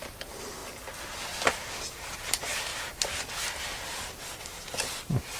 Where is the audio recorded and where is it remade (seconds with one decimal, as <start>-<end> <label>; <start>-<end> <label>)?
0.0-0.6 remade; 0.6-1.7 recorded; 1.7-2.7 remade; 2.7-3.3 recorded; 3.3-5.4 remade